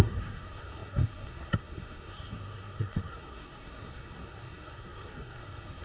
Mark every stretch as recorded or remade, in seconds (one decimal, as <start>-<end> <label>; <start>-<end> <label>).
0.0-5.8 remade

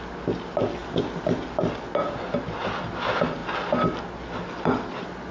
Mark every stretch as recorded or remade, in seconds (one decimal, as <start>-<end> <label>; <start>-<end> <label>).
0.0-5.3 recorded

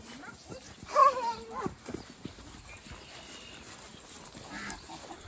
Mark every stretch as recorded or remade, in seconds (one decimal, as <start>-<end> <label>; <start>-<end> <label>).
0.0-1.0 remade; 1.0-4.2 recorded; 4.2-5.3 remade